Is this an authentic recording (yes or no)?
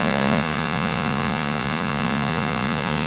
no